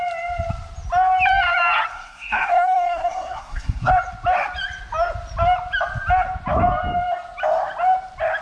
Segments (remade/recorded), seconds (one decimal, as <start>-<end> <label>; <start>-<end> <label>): 0.0-1.9 recorded; 1.9-3.9 remade; 3.9-8.4 recorded